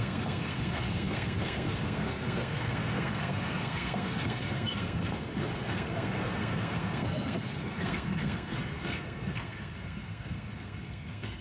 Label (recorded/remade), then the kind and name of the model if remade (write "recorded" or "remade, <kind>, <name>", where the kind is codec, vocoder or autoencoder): remade, codec, SNAC